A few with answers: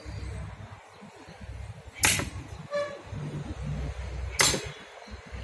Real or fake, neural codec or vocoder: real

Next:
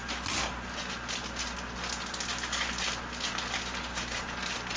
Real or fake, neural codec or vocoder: real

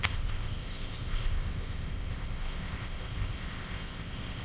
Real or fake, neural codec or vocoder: fake, codec, ZipCodec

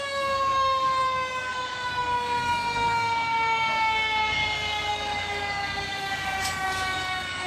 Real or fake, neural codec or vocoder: fake, codec, DAC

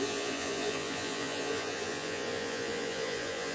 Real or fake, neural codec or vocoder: fake, vocoder, Vocos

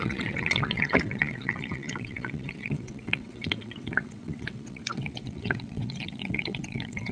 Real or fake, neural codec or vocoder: fake, vocoder, WaveNeXt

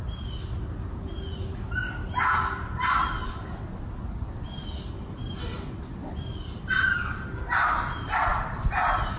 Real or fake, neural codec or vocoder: real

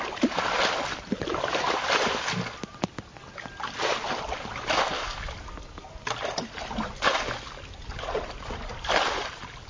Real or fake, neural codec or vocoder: real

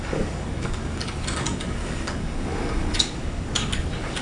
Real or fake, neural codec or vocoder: fake, codec, DAC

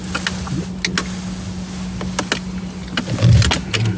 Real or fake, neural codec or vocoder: real